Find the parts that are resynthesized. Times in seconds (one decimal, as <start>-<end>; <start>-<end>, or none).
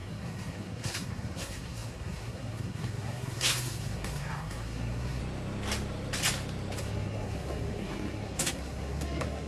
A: 0.0-5.2; 6.8-9.5